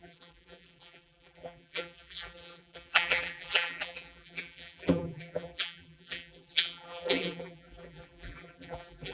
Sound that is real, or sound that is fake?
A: fake